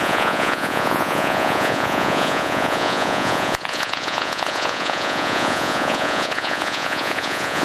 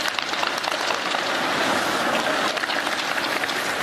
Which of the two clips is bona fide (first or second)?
second